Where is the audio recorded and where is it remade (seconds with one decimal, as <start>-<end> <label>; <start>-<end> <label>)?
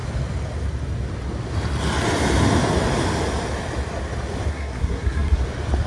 0.0-4.5 recorded; 4.5-5.4 remade; 5.4-5.9 recorded